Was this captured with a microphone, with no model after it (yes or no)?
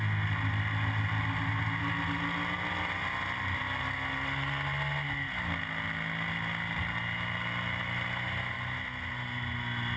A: yes